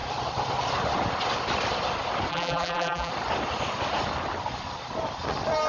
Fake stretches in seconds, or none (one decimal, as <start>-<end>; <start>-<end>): 2.3-3.1